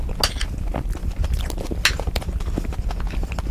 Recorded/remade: recorded